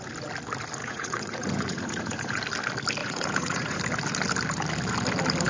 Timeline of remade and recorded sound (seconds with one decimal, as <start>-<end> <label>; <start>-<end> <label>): 0.0-0.8 recorded; 0.8-2.4 remade; 2.4-3.0 recorded; 3.0-3.8 remade; 3.8-5.5 recorded